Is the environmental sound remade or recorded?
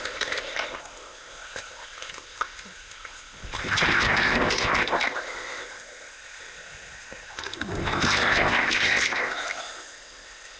remade